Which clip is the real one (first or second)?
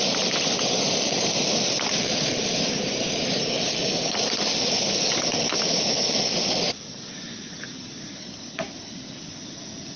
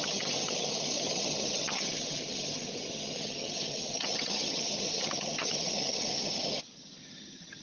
first